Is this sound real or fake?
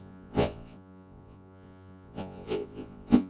fake